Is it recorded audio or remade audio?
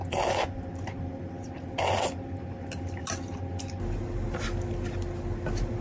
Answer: recorded